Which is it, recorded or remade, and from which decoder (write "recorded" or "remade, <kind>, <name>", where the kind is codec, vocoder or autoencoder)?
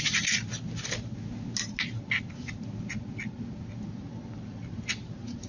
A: recorded